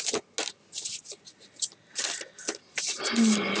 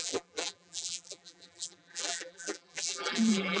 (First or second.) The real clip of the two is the first